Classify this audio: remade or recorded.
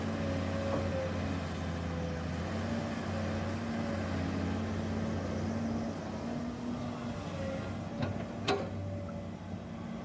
recorded